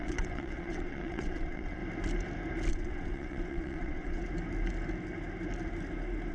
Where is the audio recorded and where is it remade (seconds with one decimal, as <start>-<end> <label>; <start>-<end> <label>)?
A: 0.0-1.8 remade; 1.8-2.7 recorded; 2.7-4.2 remade; 4.2-6.3 recorded